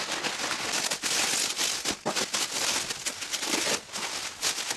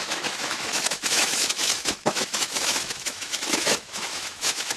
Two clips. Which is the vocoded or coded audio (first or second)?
second